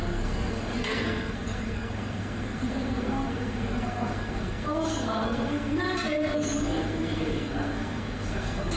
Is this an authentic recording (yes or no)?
no